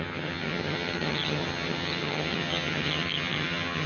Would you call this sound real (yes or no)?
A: no